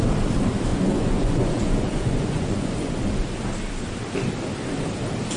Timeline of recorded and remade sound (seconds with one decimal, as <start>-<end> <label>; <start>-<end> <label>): 0.0-0.7 recorded; 0.7-3.0 remade; 3.0-5.4 recorded